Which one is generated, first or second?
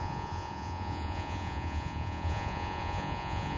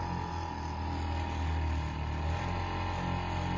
first